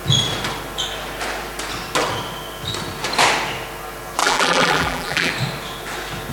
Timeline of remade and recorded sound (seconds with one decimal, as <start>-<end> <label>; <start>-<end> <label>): 0.0-4.2 recorded; 4.2-5.3 remade; 5.3-6.3 recorded